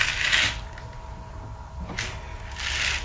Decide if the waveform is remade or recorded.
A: recorded